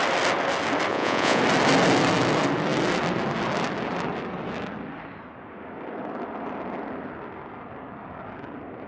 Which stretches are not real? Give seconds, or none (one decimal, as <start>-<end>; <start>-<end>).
0.9-1.4

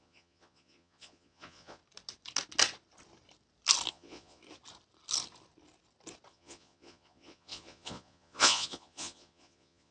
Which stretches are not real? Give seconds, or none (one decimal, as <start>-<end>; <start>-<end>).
0.0-1.8; 3.9-4.4; 6.3-9.9

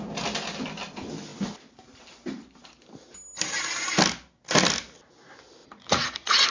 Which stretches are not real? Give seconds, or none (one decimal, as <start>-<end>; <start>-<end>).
5.6-6.5

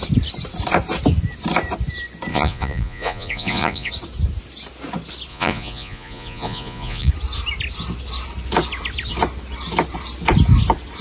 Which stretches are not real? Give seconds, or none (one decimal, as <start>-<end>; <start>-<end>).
2.3-3.9; 5.3-7.1

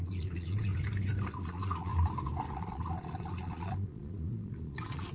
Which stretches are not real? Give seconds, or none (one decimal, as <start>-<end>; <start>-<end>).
0.0-0.7; 1.4-1.9; 2.5-5.1

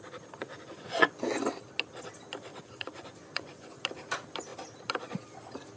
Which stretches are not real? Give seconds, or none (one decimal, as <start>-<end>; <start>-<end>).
0.4-1.4; 2.5-3.7